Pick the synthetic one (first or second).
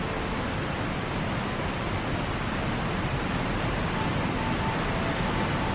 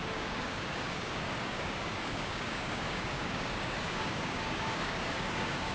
second